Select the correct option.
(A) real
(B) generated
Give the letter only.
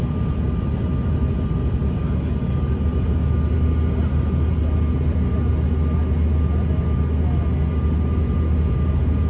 A